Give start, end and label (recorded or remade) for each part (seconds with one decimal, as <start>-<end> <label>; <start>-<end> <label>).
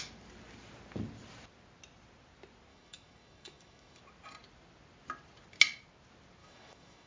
0.0-2.7 recorded; 2.7-4.0 remade; 4.0-6.4 recorded; 6.4-7.1 remade